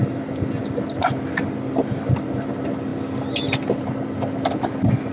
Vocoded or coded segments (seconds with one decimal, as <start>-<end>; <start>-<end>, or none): none